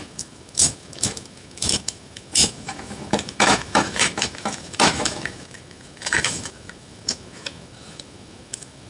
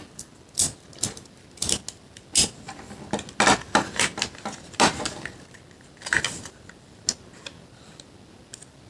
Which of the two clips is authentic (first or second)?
second